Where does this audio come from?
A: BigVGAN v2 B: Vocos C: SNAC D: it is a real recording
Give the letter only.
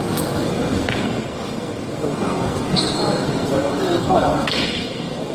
C